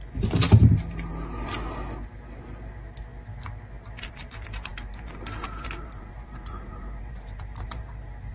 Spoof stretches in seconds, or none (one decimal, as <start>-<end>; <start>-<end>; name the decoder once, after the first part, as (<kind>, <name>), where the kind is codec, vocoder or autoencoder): 0.0-1.1 (vocoder, BigVGAN v2); 4.1-8.3